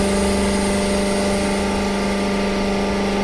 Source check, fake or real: real